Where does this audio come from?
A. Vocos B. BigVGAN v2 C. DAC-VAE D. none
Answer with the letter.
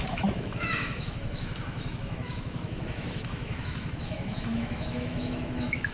C